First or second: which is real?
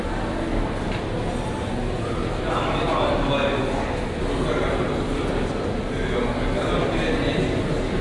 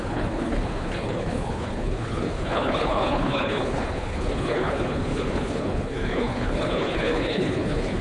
first